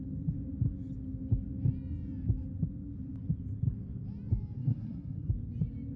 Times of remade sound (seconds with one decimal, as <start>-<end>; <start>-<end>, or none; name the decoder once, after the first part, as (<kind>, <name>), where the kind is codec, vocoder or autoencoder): 4.6-5.3 (codec, SNAC)